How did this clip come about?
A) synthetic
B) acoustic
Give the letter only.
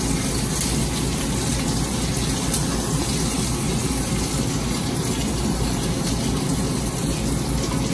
B